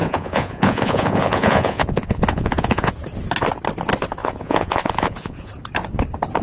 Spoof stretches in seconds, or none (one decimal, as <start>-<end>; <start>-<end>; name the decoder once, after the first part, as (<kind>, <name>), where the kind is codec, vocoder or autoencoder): 0.0-2.9 (vocoder, Vocos); 4.2-5.5